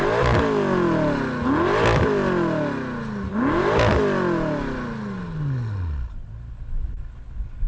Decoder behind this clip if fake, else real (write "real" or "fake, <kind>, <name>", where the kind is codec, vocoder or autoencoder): real